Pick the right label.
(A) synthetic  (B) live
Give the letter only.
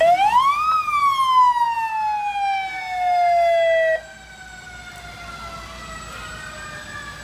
B